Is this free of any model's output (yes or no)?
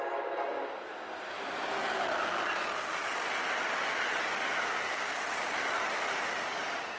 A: yes